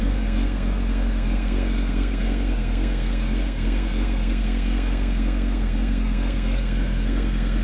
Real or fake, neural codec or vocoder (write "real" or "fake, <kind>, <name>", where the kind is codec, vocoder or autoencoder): fake, codec, SNAC